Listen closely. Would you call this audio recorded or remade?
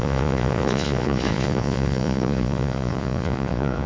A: remade